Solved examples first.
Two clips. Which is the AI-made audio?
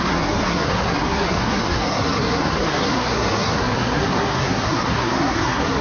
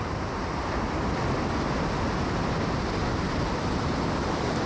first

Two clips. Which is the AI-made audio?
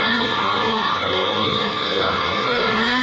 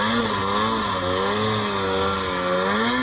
first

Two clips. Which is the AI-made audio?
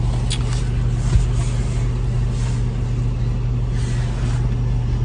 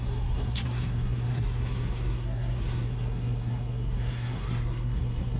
second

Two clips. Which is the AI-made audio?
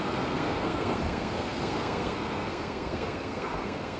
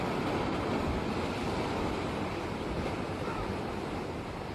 first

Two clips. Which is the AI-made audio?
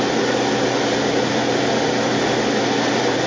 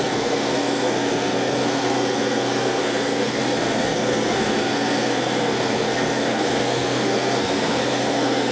second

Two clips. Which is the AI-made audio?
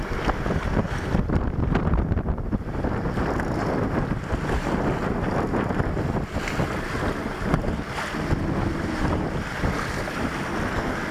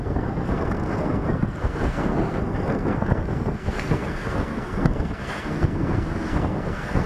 second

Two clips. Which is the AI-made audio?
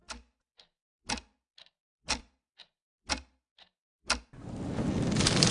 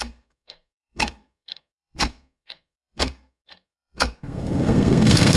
second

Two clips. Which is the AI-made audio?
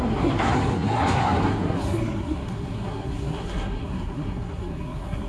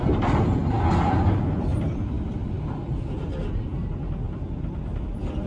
first